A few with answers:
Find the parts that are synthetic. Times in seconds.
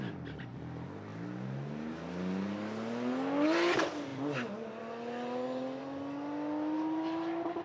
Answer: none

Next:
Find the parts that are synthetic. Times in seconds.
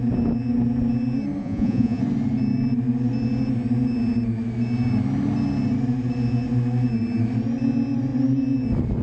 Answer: 1.4-2.0 (vocoder, Vocos)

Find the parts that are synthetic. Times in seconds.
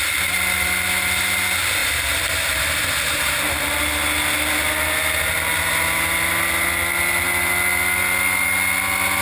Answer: 1.8-3.8 (vocoder, BigVGAN v2)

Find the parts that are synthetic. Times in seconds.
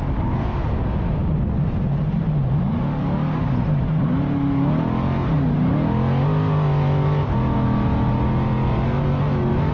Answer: none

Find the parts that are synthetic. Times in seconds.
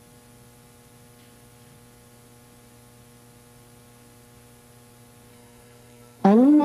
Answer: 5.3-6.6 (codec, SNAC)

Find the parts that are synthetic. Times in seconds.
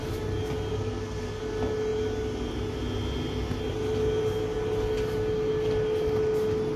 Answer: 0.7-1.4 (codec, SNAC)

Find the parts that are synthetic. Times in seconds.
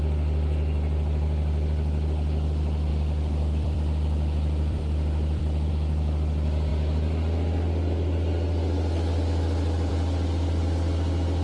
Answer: 2.9-5.7 (vocoder, BigVGAN v2)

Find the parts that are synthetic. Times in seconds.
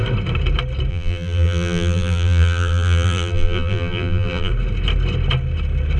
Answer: 0.9-4.5 (vocoder, BigVGAN v2)